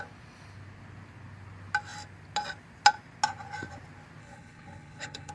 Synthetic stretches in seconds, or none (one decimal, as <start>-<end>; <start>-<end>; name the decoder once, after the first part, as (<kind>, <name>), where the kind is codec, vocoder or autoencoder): 4.2-5.3 (codec, HILCodec)